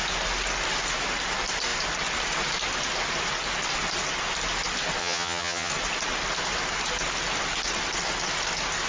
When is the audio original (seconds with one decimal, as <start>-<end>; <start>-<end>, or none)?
0.0-5.0; 5.7-8.9